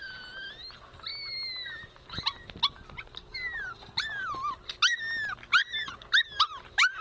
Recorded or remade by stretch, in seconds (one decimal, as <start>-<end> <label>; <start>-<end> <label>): 0.0-7.0 recorded